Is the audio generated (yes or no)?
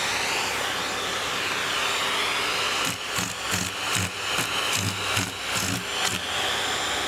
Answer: no